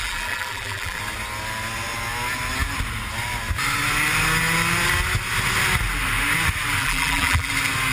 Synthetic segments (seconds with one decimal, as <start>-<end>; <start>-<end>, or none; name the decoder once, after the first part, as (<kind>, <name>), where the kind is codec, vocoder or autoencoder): 0.0-1.0 (vocoder, BigVGAN v2); 6.8-7.5